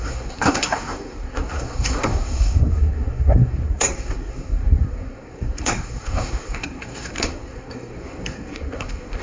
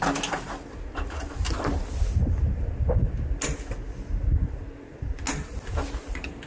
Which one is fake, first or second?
first